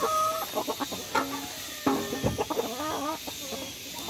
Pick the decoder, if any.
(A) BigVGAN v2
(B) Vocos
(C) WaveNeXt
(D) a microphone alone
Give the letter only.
D